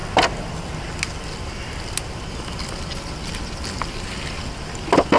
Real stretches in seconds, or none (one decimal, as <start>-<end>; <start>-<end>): 0.0-5.2